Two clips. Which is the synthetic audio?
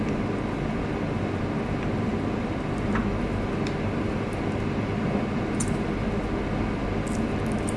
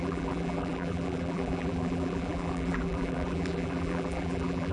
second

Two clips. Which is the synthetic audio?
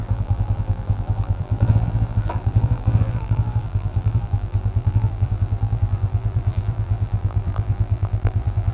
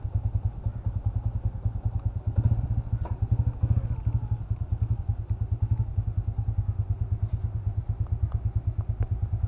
first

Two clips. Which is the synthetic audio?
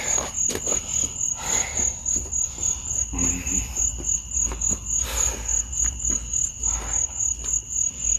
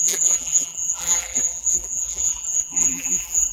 second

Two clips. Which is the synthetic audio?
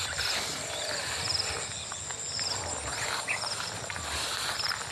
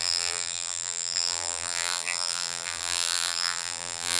second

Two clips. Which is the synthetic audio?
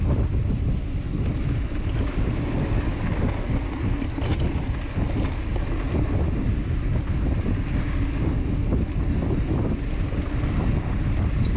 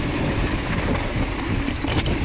second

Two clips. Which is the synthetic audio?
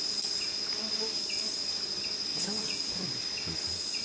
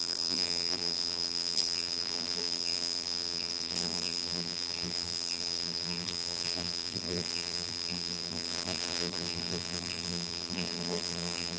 second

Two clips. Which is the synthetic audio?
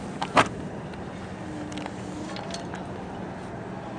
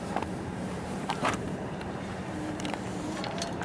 second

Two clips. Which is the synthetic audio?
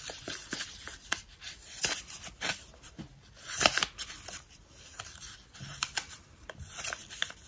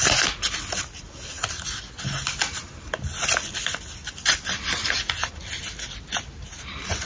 first